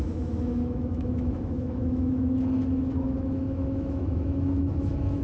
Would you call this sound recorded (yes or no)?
no